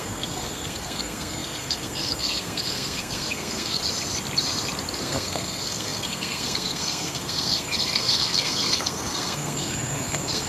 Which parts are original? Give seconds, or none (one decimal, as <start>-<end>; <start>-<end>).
3.8-5.0

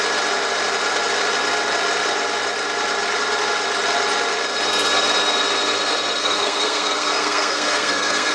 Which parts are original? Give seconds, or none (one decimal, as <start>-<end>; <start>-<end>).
0.0-6.2

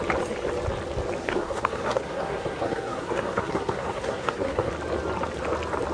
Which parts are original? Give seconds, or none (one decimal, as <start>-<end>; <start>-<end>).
0.0-1.2; 4.7-5.9

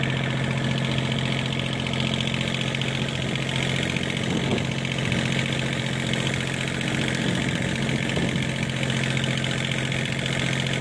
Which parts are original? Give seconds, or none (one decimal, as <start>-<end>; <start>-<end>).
0.0-10.8

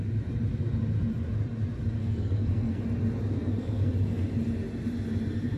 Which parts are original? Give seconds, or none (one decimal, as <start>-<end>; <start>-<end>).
0.0-2.0; 2.8-3.3; 3.9-5.6

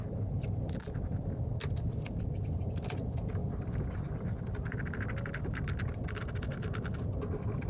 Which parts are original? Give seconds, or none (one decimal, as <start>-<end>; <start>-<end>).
0.0-7.7

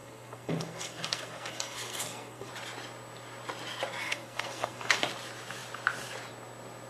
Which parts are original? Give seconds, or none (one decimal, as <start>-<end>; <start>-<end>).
2.5-4.0; 5.0-6.9